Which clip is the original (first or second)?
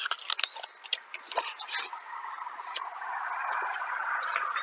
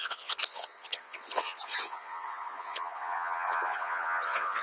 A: first